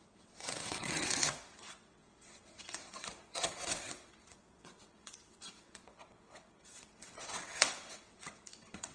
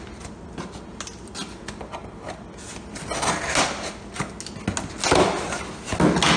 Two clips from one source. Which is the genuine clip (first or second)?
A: second